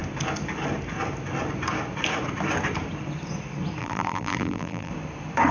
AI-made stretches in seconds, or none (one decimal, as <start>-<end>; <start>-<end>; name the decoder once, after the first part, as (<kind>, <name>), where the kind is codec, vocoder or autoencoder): 3.8-4.9 (vocoder, BigVGAN v2)